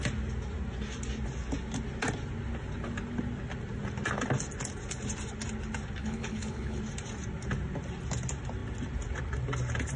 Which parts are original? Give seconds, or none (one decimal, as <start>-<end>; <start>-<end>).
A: 0.0-6.0; 6.8-10.0